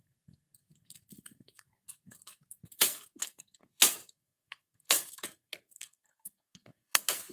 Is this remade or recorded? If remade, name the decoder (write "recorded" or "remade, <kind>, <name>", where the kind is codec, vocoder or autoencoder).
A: remade, codec, SNAC